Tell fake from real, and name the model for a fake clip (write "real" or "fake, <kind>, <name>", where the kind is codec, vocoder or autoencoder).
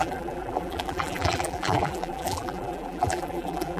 fake, vocoder, BigVGAN v2